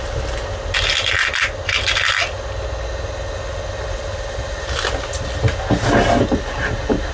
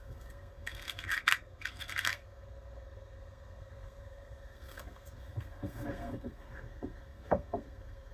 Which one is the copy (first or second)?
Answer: second